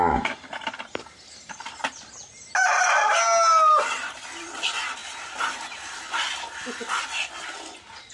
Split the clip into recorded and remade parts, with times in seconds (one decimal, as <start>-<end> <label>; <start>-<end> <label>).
0.0-8.1 recorded